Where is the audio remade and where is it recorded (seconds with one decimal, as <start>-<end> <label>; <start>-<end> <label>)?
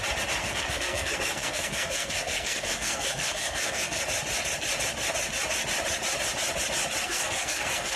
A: 0.0-0.4 recorded; 0.4-4.0 remade; 4.0-7.0 recorded; 7.0-8.0 remade